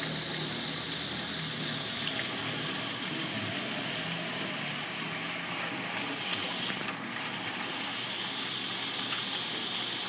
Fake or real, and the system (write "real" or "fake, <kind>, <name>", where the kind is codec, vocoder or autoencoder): real